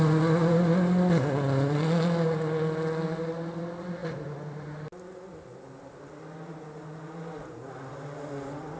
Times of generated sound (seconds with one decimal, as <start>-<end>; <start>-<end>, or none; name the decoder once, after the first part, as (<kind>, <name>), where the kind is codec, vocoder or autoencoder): none